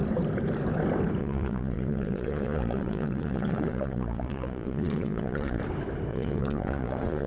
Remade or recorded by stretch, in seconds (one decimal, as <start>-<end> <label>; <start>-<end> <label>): 0.0-1.2 recorded; 1.2-5.6 remade; 5.6-6.1 recorded; 6.1-7.3 remade